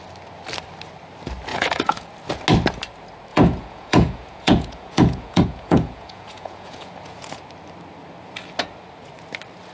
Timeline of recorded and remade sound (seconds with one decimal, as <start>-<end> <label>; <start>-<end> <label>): 0.0-1.5 recorded; 1.5-2.1 remade; 2.1-3.3 recorded; 3.3-7.4 remade; 7.4-9.7 recorded